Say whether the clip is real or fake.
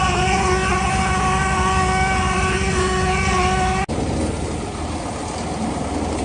real